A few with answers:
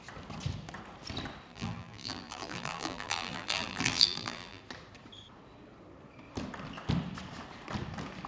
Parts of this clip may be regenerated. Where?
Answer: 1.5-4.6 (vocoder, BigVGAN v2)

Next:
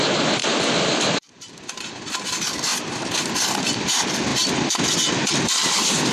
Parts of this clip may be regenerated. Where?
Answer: 0.4-1.6 (vocoder, BigVGAN v2)

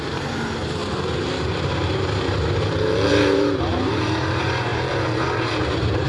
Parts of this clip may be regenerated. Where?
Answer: 0.0-0.8 (vocoder, BigVGAN v2); 3.1-6.1